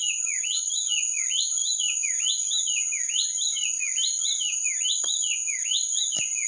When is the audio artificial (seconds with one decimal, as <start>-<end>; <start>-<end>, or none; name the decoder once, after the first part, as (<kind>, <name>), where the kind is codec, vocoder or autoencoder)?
0.0-1.6 (vocoder, Vocos); 5.0-6.5